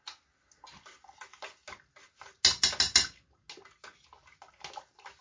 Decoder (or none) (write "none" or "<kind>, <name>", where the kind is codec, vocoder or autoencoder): none